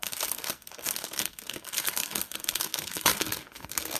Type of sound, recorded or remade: remade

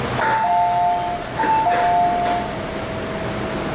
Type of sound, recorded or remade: recorded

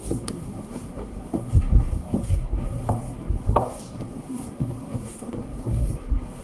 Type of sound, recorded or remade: remade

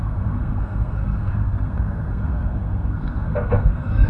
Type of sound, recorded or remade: remade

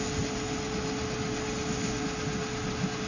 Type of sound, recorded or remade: recorded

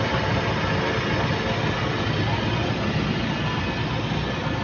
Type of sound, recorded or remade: recorded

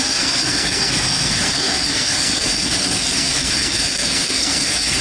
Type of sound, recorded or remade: remade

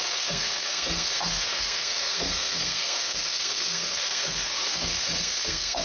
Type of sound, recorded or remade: remade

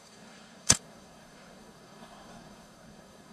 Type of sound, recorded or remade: remade